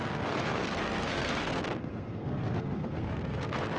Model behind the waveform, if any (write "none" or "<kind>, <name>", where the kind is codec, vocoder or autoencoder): codec, SNAC